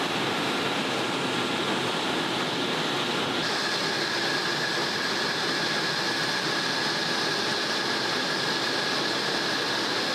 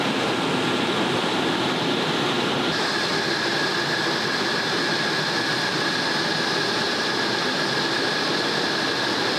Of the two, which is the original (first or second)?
first